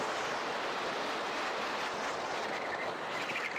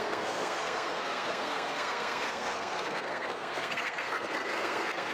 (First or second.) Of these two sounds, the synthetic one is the second